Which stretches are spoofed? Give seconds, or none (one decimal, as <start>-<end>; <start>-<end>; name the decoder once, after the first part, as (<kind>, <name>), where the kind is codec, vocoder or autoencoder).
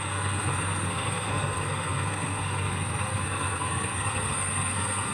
0.0-5.1 (codec, SNAC)